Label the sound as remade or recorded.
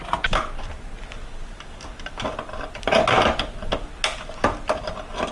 recorded